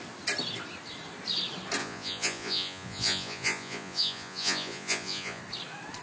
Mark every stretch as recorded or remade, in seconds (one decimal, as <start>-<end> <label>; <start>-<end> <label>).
0.0-1.8 recorded; 1.8-5.4 remade; 5.4-6.0 recorded